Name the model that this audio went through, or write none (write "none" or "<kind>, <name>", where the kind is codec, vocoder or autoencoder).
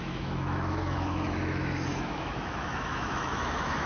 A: autoencoder, DAC-VAE